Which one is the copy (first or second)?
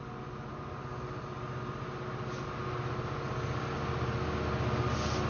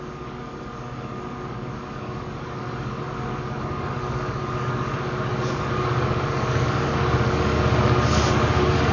second